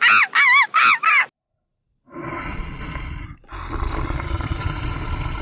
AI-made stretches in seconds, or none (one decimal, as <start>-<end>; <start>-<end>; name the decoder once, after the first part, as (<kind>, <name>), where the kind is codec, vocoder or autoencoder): none

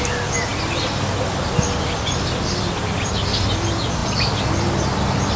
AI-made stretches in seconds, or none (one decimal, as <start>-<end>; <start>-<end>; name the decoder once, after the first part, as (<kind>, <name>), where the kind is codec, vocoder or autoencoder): none

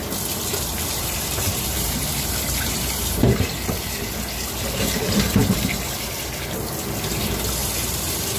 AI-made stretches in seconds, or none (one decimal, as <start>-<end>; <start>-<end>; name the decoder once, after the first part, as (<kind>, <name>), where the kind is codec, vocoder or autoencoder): 0.5-3.2 (vocoder, BigVGAN v2); 7.6-8.4

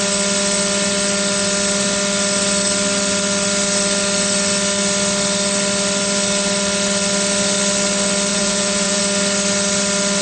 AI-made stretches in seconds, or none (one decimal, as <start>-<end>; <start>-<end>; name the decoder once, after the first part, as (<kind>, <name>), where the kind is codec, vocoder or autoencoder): 8.3-9.0 (vocoder, Vocos)

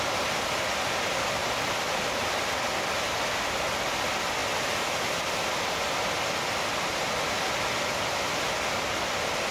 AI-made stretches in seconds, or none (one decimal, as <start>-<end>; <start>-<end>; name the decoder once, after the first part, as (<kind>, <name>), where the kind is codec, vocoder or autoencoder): none

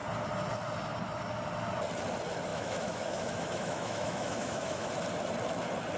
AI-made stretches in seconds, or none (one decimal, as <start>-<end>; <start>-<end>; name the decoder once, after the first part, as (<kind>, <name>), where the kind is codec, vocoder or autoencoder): 2.5-4.9 (autoencoder, DAC-VAE)

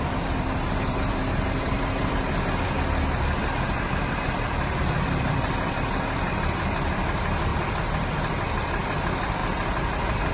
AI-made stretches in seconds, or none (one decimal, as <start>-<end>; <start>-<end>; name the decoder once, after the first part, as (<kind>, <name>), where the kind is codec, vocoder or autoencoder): 0.0-9.4 (vocoder, BigVGAN v2)